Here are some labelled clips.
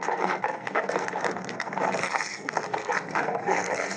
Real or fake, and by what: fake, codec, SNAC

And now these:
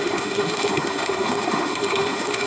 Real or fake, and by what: fake, autoencoder, DAC-VAE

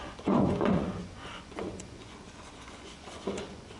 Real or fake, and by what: fake, vocoder, Vocos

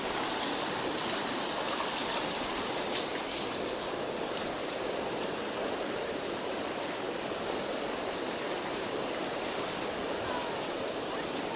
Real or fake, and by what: real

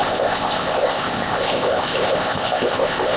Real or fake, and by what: fake, codec, ZipCodec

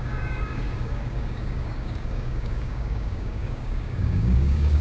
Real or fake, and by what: fake, codec, DAC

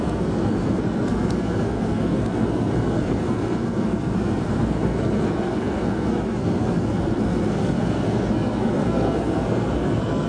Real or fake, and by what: fake, codec, SNAC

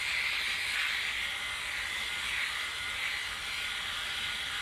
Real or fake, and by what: fake, vocoder, BigVGAN v2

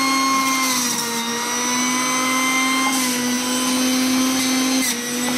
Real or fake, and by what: real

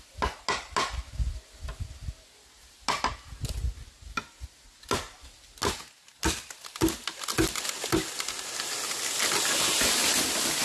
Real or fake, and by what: real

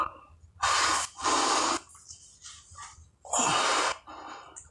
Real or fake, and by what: real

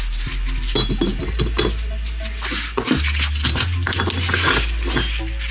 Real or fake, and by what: real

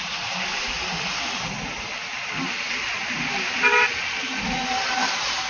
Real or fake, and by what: real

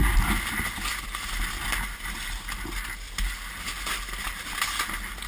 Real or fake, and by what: real